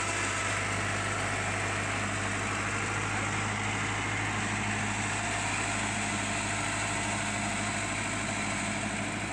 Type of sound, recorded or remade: recorded